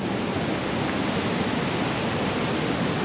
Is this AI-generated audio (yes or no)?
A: no